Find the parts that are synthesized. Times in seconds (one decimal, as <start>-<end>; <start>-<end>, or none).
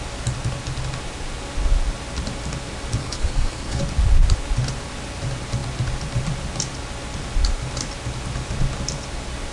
3.0-3.8